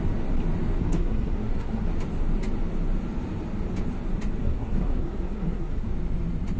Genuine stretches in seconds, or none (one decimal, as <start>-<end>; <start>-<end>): 0.0-0.8; 1.9-4.4; 5.9-6.6